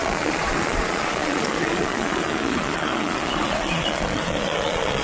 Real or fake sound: fake